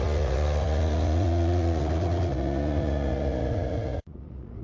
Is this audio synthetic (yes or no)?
yes